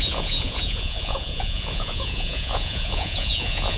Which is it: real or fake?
fake